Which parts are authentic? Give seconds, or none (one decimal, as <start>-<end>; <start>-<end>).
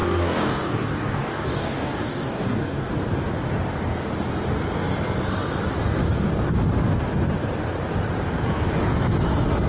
2.9-6.0; 6.6-9.7